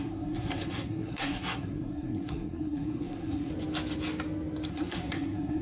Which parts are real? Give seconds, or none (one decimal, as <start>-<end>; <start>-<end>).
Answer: 3.5-4.7